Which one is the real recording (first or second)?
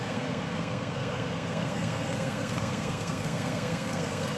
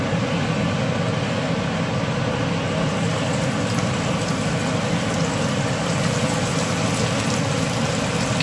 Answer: second